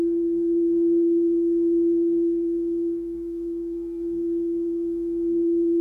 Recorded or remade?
remade